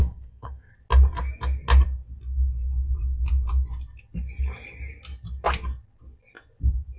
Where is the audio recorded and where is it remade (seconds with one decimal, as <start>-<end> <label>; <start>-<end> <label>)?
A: 0.0-0.7 remade; 0.7-7.0 recorded